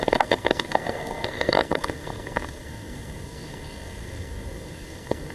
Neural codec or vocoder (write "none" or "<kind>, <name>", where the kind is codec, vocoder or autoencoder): codec, SNAC